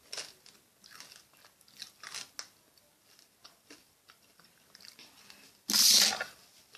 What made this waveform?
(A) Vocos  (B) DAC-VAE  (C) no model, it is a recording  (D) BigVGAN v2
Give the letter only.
C